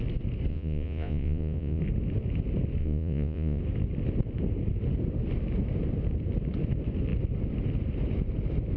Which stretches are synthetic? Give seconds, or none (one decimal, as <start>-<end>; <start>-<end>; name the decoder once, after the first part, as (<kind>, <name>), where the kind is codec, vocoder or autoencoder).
0.5-1.8 (vocoder, Vocos); 2.8-3.6